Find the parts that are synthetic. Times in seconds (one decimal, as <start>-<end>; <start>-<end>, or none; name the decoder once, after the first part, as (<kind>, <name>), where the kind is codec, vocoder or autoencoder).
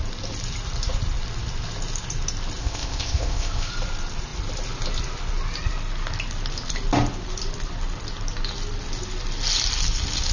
2.6-3.7 (codec, ZipCodec)